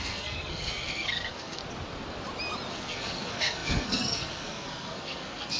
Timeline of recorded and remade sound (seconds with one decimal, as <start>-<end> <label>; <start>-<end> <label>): 0.0-1.6 remade; 1.6-2.7 recorded; 2.7-5.6 remade